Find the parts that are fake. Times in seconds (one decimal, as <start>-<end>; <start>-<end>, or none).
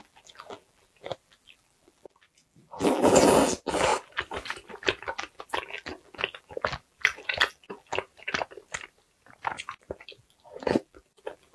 0.0-3.9; 4.7-8.1; 9.6-11.5